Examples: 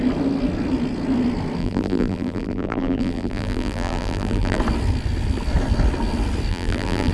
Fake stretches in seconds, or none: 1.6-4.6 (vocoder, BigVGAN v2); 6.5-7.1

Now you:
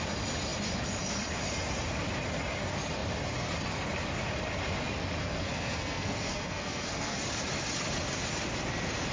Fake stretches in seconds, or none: 5.2-7.2 (codec, SNAC)

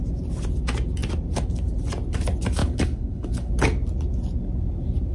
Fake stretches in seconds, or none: 2.6-3.5 (codec, HILCodec)

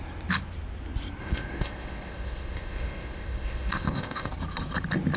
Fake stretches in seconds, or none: 1.2-4.3 (codec, ZipCodec)

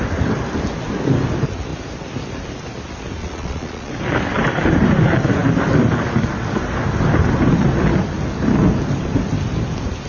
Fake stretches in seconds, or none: 3.2-3.9 (vocoder, Vocos)

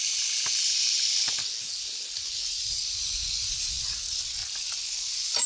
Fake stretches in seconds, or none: 2.5-3.2 (vocoder, BigVGAN v2); 3.7-4.4